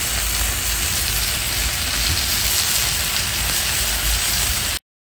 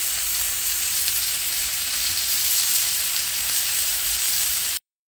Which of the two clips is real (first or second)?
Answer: first